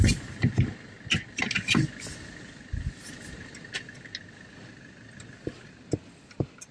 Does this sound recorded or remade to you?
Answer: recorded